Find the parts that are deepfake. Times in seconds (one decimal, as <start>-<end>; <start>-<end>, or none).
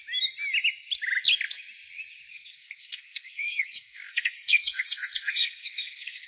2.3-6.3